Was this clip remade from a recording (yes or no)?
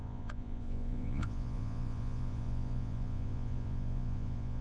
yes